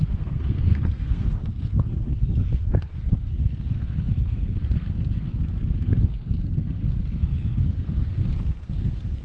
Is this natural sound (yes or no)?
no